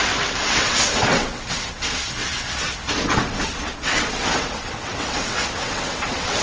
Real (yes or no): no